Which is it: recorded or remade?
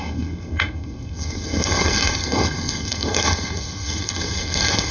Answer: remade